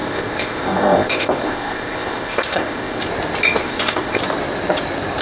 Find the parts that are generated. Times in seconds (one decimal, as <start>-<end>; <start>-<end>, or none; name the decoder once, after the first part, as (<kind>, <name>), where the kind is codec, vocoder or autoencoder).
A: 0.0-3.1 (codec, ZipCodec); 3.6-4.2